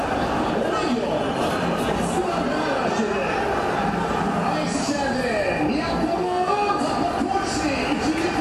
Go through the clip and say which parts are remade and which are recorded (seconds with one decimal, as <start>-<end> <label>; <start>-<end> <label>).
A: 0.0-6.1 recorded; 6.1-6.8 remade; 6.8-8.4 recorded